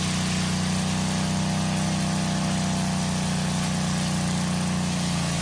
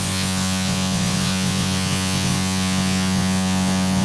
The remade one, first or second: second